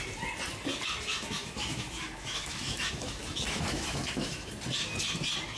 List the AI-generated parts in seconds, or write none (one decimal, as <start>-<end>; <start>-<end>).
1.1-4.5